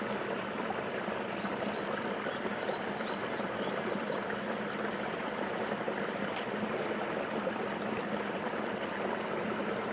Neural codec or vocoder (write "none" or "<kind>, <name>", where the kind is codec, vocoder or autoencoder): vocoder, BigVGAN v2